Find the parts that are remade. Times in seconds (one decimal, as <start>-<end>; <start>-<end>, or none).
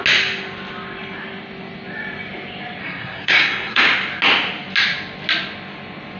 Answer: 2.8-3.8